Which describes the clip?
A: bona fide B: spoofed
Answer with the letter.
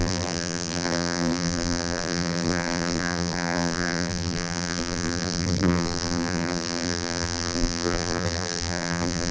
B